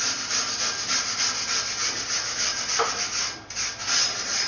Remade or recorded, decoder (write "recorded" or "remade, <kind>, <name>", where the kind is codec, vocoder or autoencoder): recorded